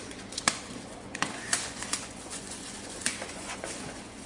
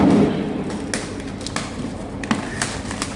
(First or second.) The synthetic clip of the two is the first